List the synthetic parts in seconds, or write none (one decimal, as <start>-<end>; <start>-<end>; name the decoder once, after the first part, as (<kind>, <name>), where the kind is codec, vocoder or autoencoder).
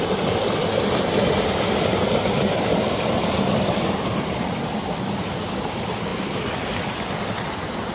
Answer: 0.0-7.9 (vocoder, BigVGAN v2)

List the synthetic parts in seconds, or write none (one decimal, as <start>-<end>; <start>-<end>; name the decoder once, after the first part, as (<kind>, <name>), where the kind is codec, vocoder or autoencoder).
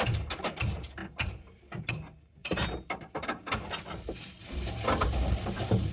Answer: 2.4-3.6 (vocoder, BigVGAN v2)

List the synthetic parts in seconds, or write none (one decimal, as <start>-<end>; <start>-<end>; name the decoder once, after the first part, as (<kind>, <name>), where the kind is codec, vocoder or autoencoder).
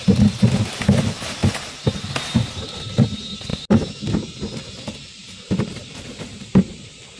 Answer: 1.4-2.0 (vocoder, BigVGAN v2); 5.2-6.6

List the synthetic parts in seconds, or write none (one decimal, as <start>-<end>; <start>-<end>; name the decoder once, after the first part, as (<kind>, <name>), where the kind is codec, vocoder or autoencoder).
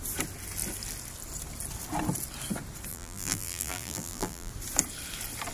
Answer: 2.9-4.5 (vocoder, BigVGAN v2)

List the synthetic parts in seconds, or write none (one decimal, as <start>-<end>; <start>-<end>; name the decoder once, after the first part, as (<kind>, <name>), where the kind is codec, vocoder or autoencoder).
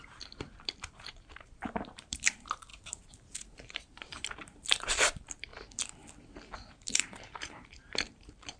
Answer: 0.0-5.5 (vocoder, BigVGAN v2); 6.7-8.6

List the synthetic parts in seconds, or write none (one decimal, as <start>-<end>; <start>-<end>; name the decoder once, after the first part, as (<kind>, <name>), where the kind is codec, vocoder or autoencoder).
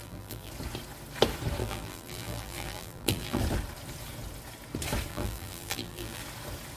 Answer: 0.0-0.5 (vocoder, BigVGAN v2); 1.6-3.4; 5.1-6.2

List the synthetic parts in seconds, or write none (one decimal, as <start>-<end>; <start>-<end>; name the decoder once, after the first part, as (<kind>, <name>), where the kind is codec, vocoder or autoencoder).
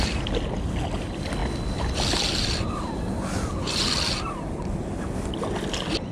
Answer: none